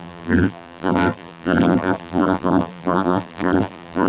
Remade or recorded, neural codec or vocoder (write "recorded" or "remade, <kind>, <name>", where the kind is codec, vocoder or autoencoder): remade, vocoder, BigVGAN v2